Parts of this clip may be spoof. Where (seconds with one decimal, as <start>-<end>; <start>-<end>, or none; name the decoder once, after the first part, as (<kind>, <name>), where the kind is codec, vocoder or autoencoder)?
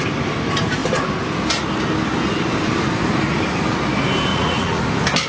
4.3-4.8 (vocoder, Vocos)